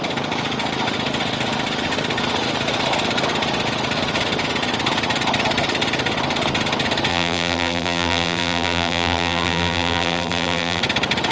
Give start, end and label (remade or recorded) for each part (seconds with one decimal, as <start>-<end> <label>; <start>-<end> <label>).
0.0-7.1 recorded; 7.1-10.8 remade; 10.8-11.3 recorded